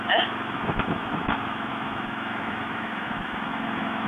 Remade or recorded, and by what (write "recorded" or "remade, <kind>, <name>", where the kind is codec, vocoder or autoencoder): remade, autoencoder, DAC-VAE